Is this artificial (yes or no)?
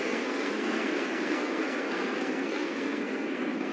yes